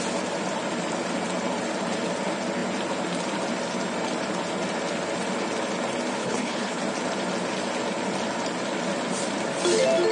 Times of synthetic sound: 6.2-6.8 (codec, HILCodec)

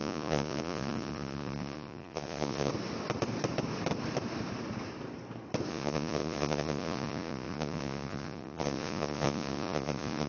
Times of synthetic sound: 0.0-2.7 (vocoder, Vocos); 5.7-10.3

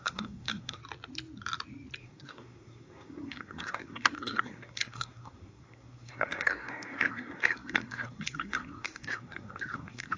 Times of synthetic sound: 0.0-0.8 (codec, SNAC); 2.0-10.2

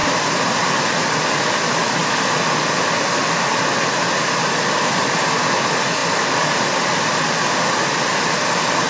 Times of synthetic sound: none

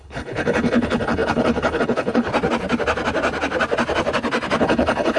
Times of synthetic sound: 0.0-2.3 (codec, HILCodec); 4.6-5.2

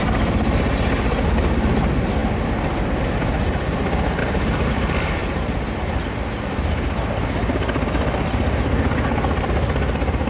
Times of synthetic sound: 4.2-4.7 (vocoder, BigVGAN v2); 5.2-6.0

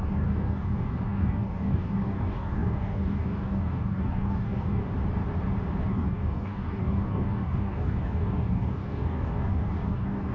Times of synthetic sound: 0.0-4.8 (codec, DAC); 5.8-10.3

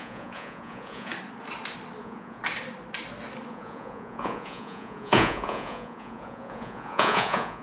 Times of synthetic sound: 0.0-1.1 (vocoder, Vocos); 2.0-2.4; 3.5-7.6